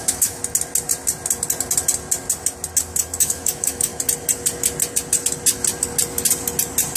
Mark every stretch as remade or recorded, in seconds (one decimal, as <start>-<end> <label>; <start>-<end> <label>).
0.0-0.4 remade; 0.4-3.2 recorded; 3.2-3.9 remade; 3.9-7.0 recorded